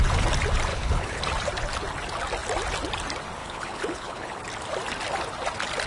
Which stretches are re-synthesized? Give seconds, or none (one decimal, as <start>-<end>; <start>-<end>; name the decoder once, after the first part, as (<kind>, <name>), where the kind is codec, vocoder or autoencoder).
0.7-1.2 (codec, HILCodec); 3.4-4.4